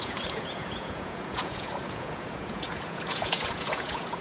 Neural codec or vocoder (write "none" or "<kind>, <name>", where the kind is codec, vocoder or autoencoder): vocoder, Vocos